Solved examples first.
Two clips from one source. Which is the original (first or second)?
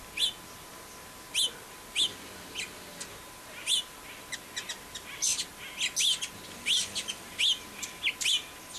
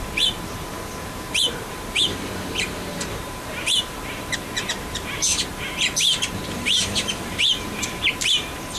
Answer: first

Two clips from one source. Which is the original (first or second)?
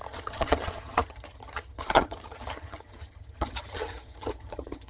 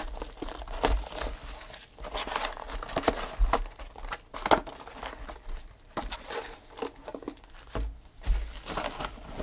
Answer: second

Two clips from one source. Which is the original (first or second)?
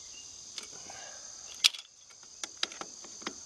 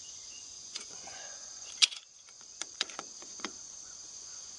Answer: first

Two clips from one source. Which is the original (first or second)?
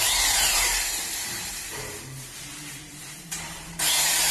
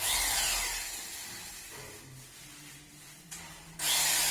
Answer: second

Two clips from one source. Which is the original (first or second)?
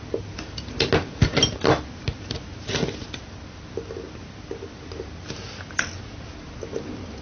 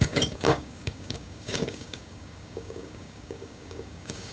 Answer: first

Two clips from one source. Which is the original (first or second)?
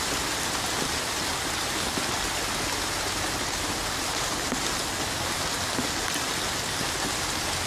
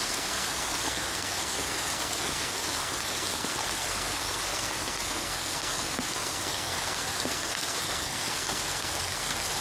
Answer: first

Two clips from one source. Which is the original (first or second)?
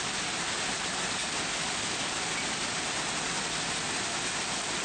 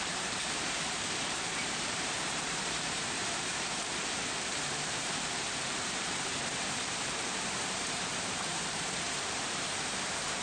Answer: first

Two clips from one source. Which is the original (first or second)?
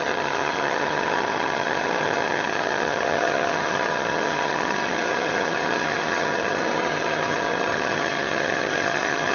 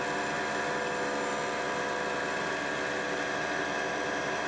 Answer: second